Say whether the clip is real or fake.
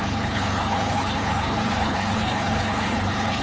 fake